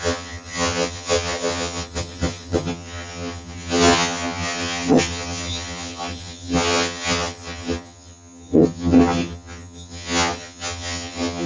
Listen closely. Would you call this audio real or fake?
fake